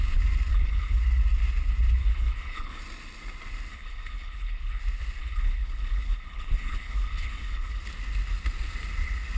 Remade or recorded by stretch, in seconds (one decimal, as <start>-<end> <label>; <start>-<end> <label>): 0.0-0.5 recorded; 0.5-1.0 remade; 1.0-2.0 recorded; 2.0-2.8 remade; 2.8-3.7 recorded; 3.7-4.8 remade; 4.8-5.2 recorded; 5.2-7.8 remade; 7.8-9.4 recorded